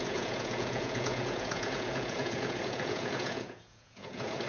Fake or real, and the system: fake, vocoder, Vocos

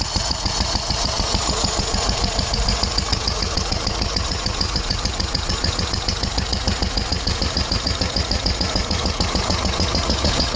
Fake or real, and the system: fake, vocoder, Vocos